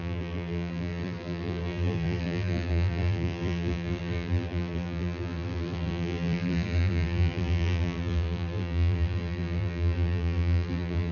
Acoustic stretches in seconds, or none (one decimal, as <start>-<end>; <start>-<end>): none